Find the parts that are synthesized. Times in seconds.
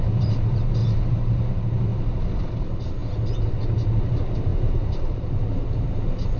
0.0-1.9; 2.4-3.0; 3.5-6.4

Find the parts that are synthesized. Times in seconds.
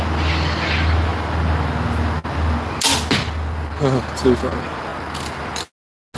none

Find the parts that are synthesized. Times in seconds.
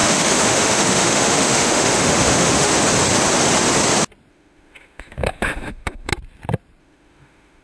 0.0-2.7; 4.3-6.1; 6.8-7.6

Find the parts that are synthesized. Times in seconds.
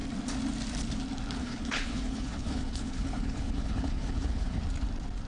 1.4-4.6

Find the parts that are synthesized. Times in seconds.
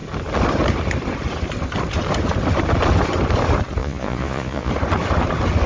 3.8-4.7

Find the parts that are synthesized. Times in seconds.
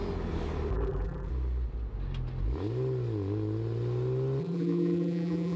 0.7-1.3; 4.4-5.6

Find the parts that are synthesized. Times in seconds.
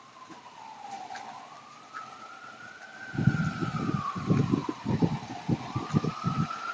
none